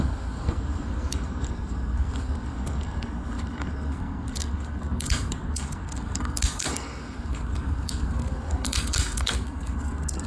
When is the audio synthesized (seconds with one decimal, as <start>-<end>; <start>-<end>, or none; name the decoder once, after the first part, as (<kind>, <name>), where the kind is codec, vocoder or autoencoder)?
0.0-10.3 (codec, SNAC)